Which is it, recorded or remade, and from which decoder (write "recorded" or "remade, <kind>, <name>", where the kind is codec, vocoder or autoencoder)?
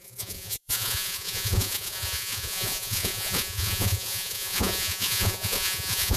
remade, vocoder, Vocos